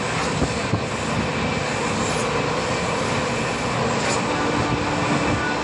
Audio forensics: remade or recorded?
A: recorded